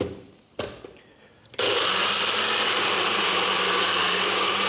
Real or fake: real